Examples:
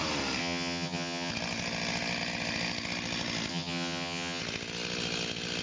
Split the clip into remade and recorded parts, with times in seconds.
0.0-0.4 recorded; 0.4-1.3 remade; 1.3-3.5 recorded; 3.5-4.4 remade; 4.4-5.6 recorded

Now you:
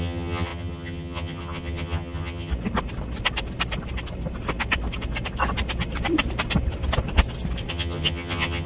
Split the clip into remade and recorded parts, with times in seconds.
0.0-2.5 remade; 2.5-7.7 recorded; 7.7-8.7 remade

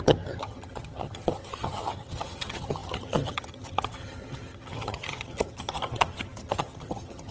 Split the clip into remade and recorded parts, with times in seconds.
0.0-7.3 remade

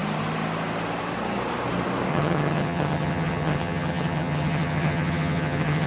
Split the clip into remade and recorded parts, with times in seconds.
0.0-2.1 recorded; 2.1-5.9 remade

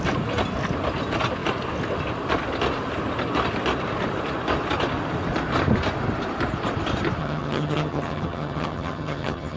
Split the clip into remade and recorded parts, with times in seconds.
0.0-7.2 recorded; 7.2-9.6 remade

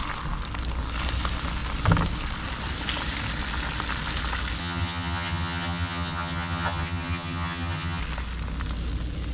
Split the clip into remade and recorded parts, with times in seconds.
0.0-4.6 recorded; 4.6-8.0 remade; 8.0-9.3 recorded

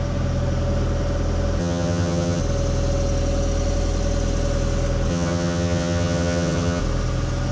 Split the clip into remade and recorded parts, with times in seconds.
0.0-1.6 recorded; 1.6-2.4 remade; 2.4-5.1 recorded; 5.1-6.8 remade; 6.8-7.5 recorded